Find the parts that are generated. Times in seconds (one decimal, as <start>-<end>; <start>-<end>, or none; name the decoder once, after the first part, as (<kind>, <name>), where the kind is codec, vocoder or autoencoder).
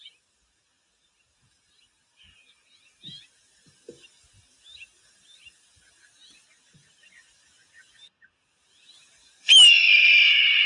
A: none